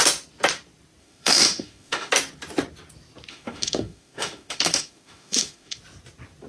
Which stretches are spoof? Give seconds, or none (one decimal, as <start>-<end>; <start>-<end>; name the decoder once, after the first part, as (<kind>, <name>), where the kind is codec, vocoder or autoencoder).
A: 1.0-2.1 (autoencoder, DAC-VAE); 3.3-5.8